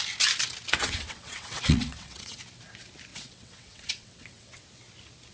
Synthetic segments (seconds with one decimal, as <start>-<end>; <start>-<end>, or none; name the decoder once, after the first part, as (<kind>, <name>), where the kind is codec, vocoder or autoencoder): 0.8-2.4 (vocoder, WaveNeXt); 3.1-4.6